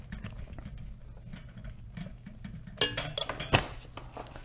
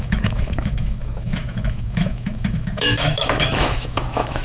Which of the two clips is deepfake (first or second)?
second